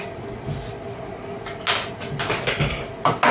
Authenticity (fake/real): real